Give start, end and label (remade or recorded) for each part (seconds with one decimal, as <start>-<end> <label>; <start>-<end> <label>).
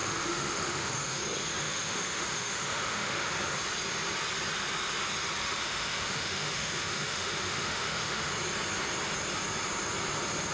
0.0-1.2 remade; 1.2-1.6 recorded; 1.6-3.3 remade; 3.3-5.4 recorded; 5.4-8.3 remade; 8.3-10.5 recorded